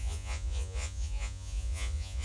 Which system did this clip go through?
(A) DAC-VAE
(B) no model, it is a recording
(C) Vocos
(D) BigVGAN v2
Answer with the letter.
C